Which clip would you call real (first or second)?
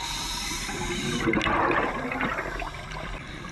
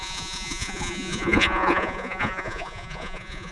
first